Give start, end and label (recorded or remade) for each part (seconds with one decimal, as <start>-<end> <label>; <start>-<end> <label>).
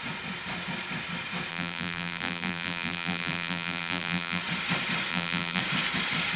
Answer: 0.0-1.5 recorded; 1.5-4.4 remade; 4.4-5.1 recorded; 5.1-5.6 remade; 5.6-6.4 recorded